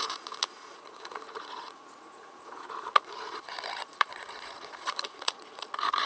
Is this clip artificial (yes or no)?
yes